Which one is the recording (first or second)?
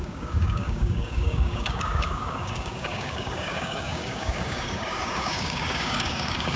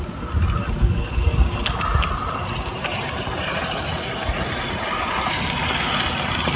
second